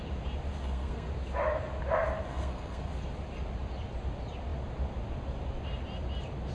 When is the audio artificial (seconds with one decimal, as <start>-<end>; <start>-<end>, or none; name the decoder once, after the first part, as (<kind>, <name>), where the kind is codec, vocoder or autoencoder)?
0.6-1.1 (codec, SNAC); 2.3-2.9